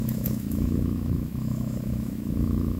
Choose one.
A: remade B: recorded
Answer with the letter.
A